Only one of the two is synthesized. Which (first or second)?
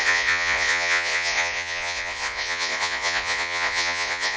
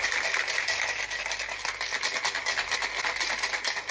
first